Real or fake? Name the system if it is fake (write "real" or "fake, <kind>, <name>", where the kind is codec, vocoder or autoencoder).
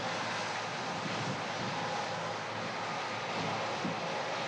real